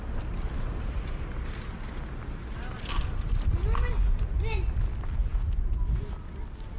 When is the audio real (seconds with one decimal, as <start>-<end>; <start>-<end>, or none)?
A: 0.0-5.3; 6.0-6.8